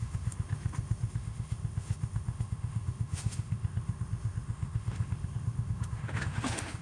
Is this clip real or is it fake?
fake